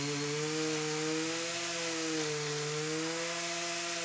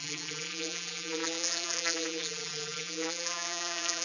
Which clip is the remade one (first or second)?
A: second